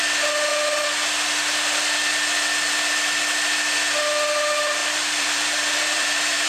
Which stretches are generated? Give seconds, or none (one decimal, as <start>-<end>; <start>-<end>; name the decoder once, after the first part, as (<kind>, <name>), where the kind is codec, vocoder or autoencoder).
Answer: 4.8-6.5 (vocoder, BigVGAN v2)